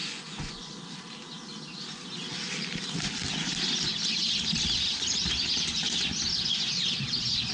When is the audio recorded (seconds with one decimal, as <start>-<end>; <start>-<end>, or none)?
0.7-7.5